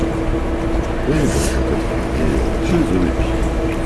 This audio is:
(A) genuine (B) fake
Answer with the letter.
A